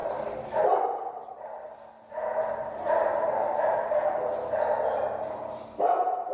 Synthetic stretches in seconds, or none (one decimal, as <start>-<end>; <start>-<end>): none